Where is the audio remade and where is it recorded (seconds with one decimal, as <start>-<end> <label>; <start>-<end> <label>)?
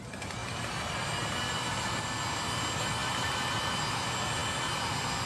0.0-5.3 recorded